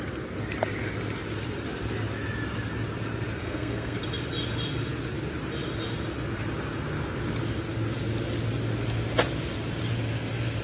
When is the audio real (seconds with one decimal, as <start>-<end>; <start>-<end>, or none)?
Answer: 0.0-3.4; 4.0-10.6